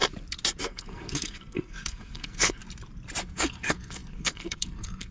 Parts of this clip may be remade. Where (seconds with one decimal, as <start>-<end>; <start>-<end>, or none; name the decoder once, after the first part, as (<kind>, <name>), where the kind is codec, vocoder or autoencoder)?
0.6-2.6 (codec, SNAC); 3.2-5.1